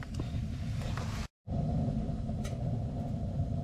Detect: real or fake real